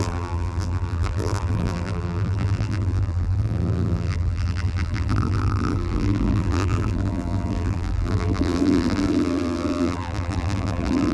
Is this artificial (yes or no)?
yes